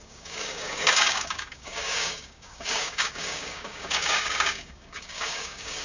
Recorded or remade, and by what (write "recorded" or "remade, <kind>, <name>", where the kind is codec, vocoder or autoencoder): remade, codec, DAC